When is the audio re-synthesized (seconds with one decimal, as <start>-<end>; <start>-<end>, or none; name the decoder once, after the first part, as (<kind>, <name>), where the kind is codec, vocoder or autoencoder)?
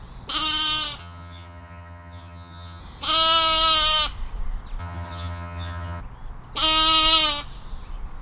1.0-2.8 (vocoder, HiFi-GAN); 4.8-6.0